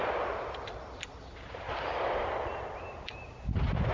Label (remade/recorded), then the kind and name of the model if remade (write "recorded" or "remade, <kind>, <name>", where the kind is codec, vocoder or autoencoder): recorded